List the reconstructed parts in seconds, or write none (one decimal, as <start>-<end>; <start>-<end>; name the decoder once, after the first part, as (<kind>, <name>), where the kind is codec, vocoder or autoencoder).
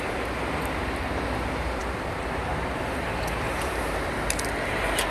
none